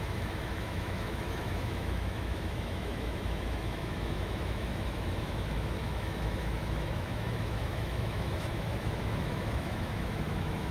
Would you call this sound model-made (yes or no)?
yes